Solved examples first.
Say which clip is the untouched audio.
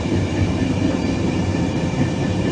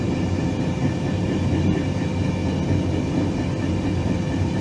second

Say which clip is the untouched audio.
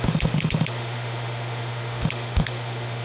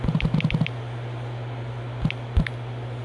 second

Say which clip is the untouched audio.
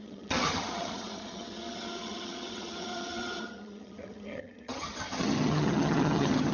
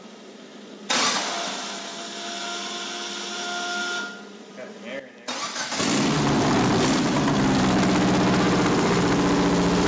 second